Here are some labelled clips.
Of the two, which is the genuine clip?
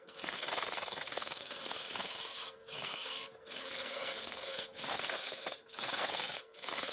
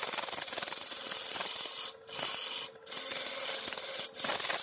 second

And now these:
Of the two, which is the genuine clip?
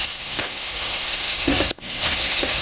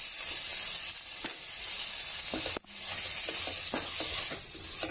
second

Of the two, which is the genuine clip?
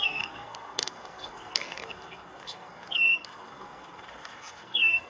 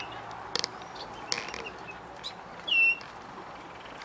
second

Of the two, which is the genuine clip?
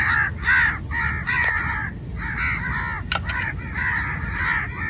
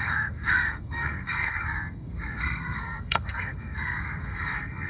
first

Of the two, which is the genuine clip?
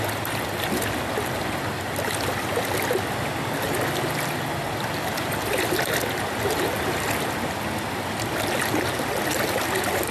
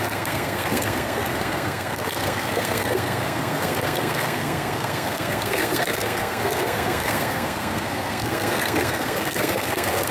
first